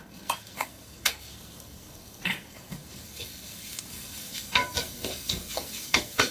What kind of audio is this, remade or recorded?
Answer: remade